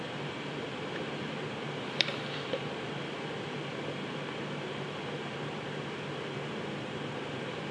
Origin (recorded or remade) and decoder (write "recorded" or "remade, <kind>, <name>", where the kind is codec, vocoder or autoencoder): remade, vocoder, BigVGAN v2